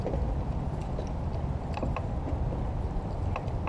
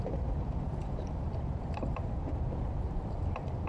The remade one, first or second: second